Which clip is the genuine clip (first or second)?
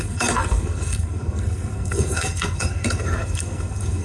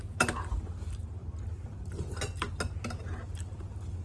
second